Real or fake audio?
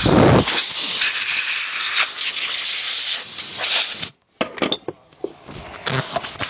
real